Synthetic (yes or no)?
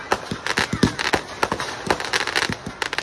no